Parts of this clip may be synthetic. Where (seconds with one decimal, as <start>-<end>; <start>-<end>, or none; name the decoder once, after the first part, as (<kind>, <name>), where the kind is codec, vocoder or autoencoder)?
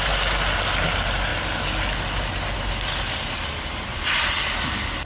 none